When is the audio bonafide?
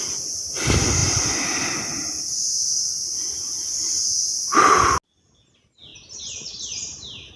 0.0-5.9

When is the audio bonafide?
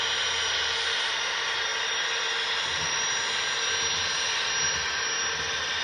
0.0-5.8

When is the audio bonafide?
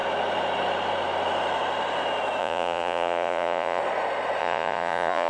0.0-2.4; 3.8-4.4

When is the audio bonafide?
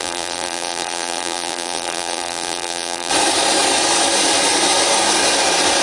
3.1-5.8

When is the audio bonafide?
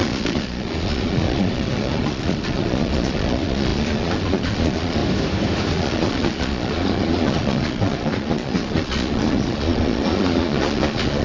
5.0-5.7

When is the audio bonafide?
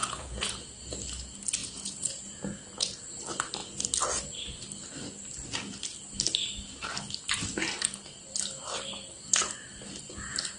0.6-1.6; 3.1-10.6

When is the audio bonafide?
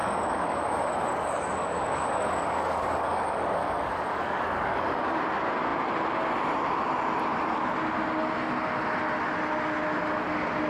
0.6-1.1; 5.2-10.7